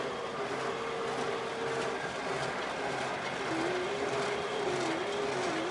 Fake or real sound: real